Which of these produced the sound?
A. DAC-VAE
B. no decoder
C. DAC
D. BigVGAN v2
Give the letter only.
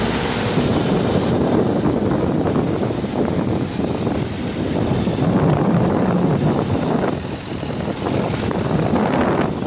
B